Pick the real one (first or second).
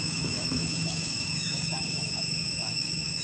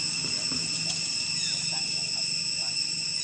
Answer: second